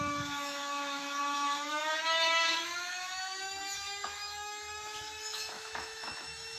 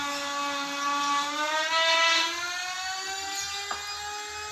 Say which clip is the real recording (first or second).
second